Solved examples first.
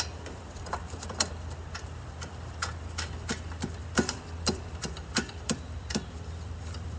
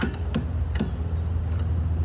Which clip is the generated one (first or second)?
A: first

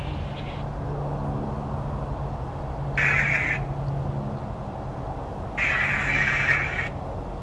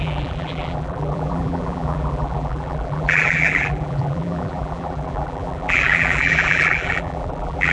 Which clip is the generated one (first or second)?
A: second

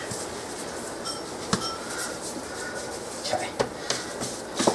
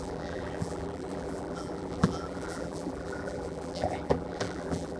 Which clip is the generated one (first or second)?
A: second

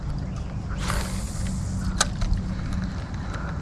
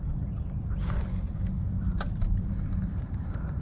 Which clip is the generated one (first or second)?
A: second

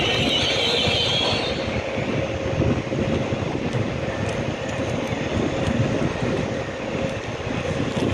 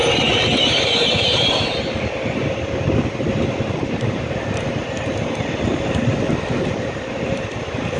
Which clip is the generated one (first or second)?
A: second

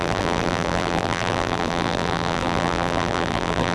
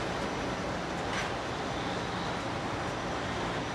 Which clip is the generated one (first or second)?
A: first